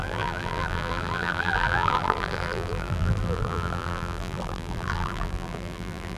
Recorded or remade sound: remade